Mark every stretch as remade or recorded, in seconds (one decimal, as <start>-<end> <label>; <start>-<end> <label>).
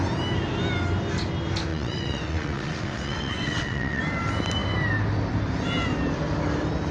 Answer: 0.0-1.7 recorded; 1.7-4.0 remade; 4.0-6.9 recorded